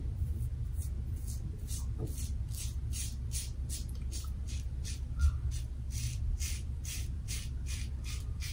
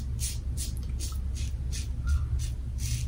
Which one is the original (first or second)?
second